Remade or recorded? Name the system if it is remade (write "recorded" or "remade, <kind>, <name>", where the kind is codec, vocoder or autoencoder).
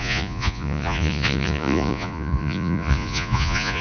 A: remade, vocoder, Vocos